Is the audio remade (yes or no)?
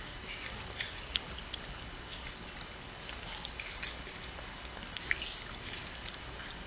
no